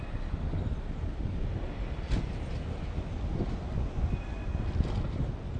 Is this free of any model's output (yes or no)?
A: yes